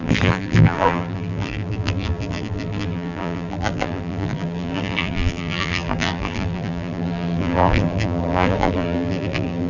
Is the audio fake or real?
fake